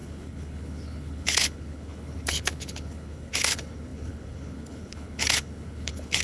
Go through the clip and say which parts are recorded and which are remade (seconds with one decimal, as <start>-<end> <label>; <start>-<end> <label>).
0.0-6.2 remade